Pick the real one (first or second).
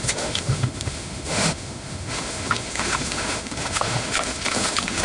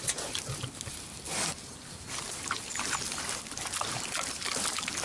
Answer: second